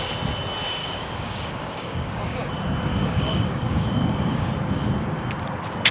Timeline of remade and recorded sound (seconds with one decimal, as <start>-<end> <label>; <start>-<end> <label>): 0.0-0.8 recorded; 0.8-2.5 remade; 2.5-3.0 recorded; 3.0-4.5 remade; 4.5-5.9 recorded